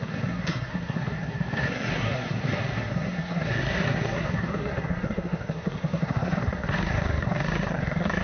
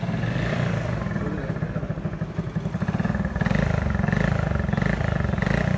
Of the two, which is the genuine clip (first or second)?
second